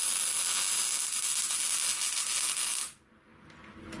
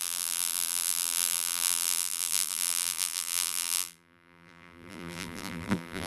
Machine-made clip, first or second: second